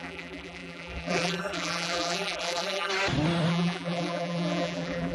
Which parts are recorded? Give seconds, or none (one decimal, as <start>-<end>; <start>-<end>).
2.9-3.5